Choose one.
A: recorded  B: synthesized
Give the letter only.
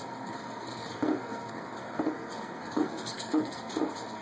B